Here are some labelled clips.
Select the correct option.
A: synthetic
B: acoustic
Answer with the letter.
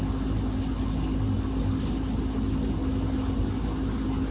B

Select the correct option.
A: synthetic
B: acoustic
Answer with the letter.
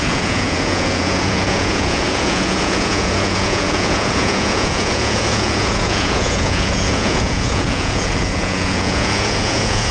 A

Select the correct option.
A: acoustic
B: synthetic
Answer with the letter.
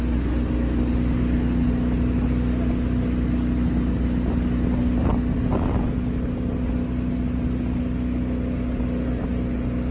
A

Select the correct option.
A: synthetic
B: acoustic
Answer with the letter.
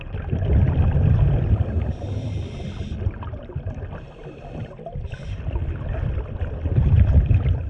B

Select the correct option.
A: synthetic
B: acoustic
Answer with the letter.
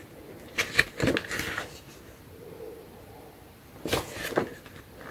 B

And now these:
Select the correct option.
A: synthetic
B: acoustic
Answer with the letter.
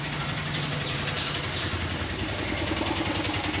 B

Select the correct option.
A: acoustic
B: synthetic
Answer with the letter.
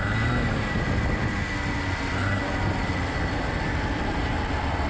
A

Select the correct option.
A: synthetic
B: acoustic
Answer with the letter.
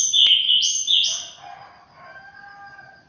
B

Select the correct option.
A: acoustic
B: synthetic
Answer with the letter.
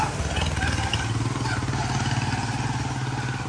A